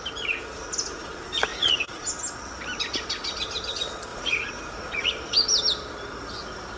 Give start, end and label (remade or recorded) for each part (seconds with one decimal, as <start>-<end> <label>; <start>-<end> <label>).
0.0-1.5 recorded; 1.5-2.1 remade; 2.1-4.1 recorded; 4.1-5.1 remade; 5.1-6.8 recorded